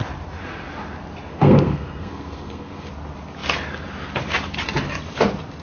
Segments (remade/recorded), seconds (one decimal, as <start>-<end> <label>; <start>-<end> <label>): 0.0-1.3 recorded; 1.3-2.9 remade; 2.9-5.6 recorded